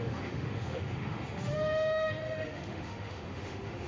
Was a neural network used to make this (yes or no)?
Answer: yes